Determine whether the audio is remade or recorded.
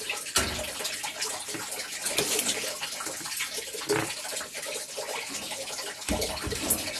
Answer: recorded